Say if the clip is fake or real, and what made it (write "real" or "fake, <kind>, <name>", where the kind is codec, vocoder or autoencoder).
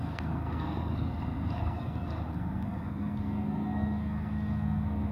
fake, codec, SNAC